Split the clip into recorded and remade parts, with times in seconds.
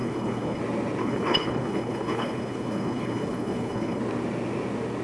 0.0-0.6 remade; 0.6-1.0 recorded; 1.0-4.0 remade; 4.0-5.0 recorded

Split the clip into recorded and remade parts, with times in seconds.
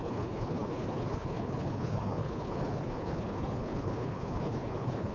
0.0-5.1 remade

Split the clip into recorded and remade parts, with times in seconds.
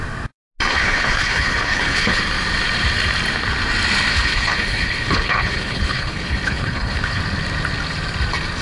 0.0-0.7 recorded; 0.7-2.2 remade; 2.2-4.1 recorded; 4.1-7.2 remade; 7.2-8.6 recorded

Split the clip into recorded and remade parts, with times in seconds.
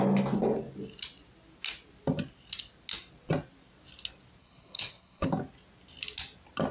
0.0-4.4 recorded; 4.4-5.3 remade; 5.3-6.7 recorded